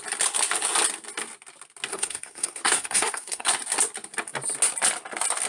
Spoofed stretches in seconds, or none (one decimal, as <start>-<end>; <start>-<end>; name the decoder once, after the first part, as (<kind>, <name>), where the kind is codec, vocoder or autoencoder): 1.9-3.5 (codec, SNAC)